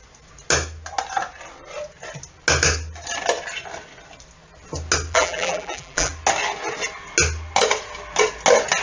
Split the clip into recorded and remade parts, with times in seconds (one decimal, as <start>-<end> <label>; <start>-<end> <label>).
0.0-5.1 recorded; 5.1-6.1 remade; 6.1-8.8 recorded